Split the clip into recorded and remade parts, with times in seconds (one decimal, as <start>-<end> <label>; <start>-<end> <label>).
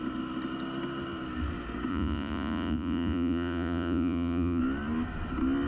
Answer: 0.0-1.9 recorded; 1.9-4.6 remade; 4.6-5.7 recorded